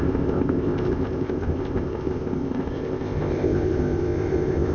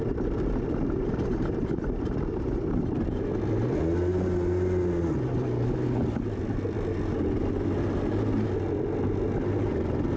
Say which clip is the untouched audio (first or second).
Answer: second